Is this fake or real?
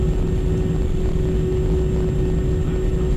real